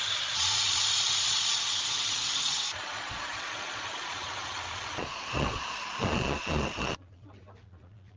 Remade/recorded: remade